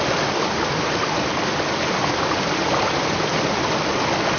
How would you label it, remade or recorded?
recorded